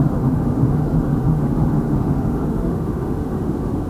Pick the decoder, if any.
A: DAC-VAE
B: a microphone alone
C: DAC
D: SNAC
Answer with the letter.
A